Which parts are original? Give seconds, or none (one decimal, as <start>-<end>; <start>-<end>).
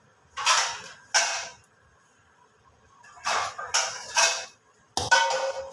0.0-5.7